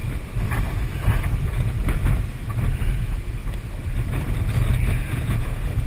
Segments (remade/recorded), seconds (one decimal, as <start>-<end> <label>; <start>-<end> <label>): 0.0-1.2 recorded; 1.2-2.0 remade; 2.0-2.9 recorded; 2.9-3.4 remade; 3.4-4.9 recorded; 4.9-5.9 remade